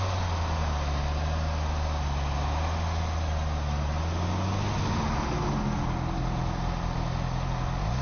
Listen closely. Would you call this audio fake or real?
real